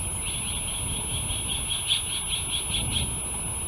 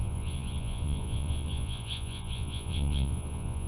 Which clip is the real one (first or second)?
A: first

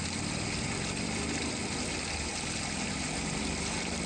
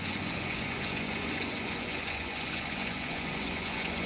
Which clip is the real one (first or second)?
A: first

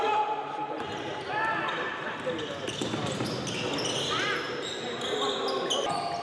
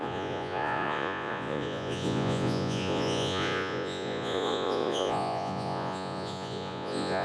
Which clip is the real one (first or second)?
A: first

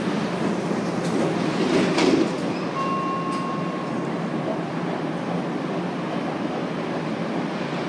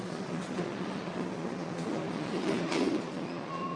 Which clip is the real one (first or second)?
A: first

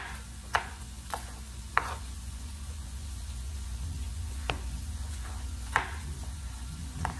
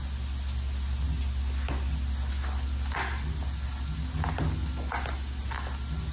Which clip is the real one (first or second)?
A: second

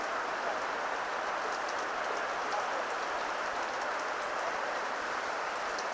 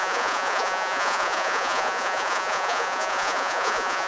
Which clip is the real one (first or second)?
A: first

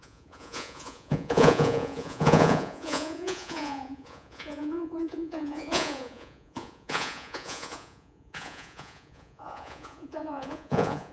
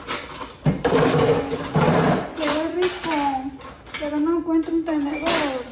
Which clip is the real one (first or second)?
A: second